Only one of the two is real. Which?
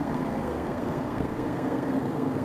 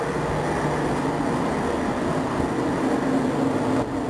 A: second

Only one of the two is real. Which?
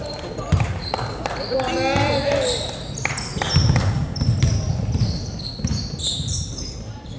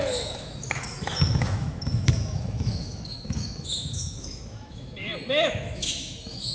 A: first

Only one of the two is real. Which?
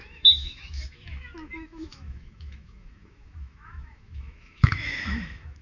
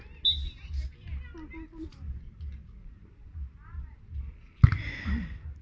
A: second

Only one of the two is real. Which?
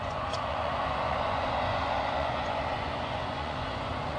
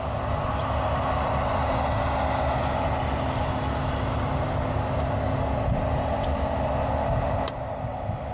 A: second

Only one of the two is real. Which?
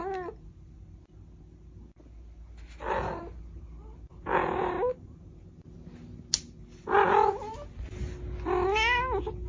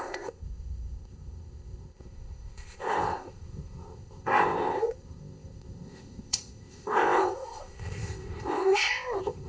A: first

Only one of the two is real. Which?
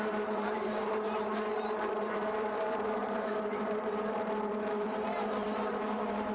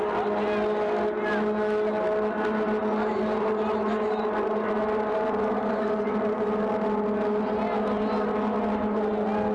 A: second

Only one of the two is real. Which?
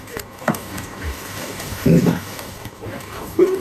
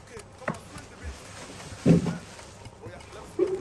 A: second